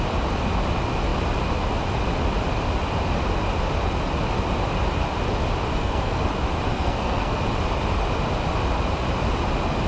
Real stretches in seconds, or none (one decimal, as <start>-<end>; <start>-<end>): 0.0-5.7; 6.2-6.7; 7.4-9.9